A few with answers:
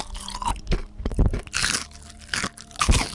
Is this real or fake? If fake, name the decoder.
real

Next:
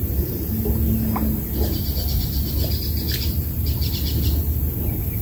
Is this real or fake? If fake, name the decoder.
real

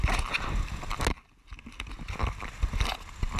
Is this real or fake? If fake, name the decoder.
real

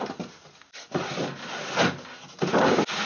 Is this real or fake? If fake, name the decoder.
real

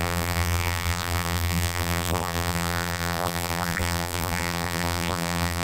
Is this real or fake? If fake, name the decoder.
fake, vocoder, BigVGAN v2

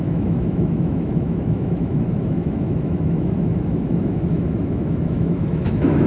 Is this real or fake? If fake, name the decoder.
fake, autoencoder, DAC-VAE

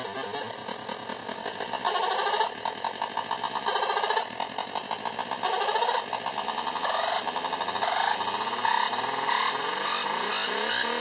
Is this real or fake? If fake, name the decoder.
real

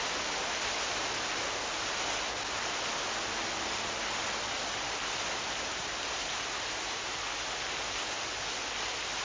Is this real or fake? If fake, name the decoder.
real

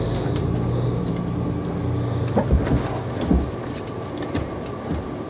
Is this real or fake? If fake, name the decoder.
real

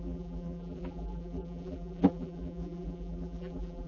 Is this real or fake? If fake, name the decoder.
fake, vocoder, BigVGAN v2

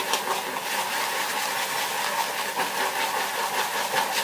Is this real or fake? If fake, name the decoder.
real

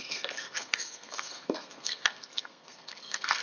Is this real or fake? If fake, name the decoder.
fake, codec, SNAC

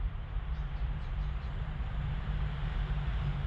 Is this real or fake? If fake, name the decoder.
fake, vocoder, BigVGAN v2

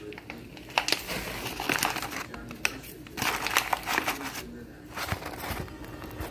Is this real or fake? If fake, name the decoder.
real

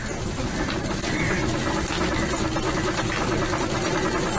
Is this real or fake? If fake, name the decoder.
real